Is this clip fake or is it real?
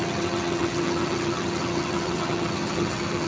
fake